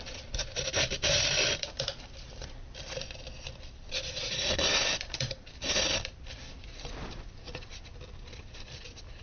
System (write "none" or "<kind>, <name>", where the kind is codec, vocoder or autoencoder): vocoder, BigVGAN v2